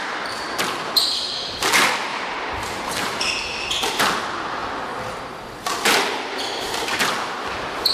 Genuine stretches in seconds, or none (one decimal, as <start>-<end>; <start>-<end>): 0.0-2.1; 4.0-7.9